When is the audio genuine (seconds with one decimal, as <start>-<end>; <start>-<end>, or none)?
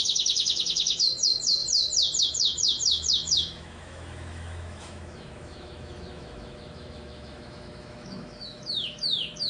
1.6-2.2